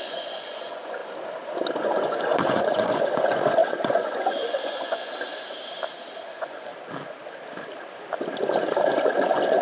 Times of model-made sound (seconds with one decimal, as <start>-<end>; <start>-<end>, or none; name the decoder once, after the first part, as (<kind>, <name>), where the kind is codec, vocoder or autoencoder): 0.0-1.0 (vocoder, Vocos); 1.8-5.1; 6.2-6.7; 8.9-9.6